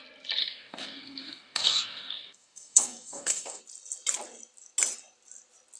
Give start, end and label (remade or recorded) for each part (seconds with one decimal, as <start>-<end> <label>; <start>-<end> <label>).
0.0-0.4 recorded; 0.4-3.6 remade; 3.6-5.8 recorded